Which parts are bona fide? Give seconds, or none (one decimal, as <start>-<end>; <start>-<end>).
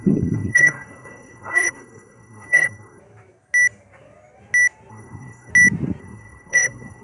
3.0-4.9; 5.5-6.0